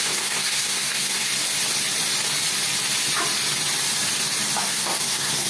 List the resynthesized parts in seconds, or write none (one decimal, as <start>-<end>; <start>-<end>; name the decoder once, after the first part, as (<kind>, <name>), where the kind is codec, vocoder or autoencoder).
0.0-1.3 (codec, SNAC); 4.6-5.5